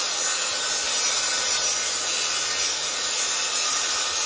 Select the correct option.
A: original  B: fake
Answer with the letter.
A